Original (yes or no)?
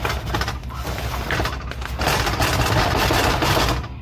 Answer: yes